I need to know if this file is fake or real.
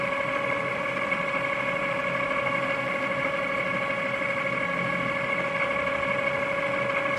real